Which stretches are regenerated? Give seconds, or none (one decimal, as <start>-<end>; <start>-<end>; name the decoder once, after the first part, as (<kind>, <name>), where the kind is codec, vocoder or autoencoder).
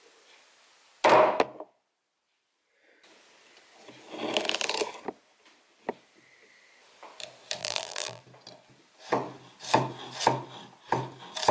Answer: 7.6-8.2 (vocoder, BigVGAN v2)